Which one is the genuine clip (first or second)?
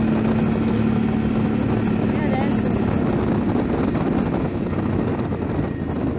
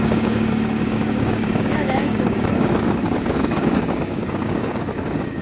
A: first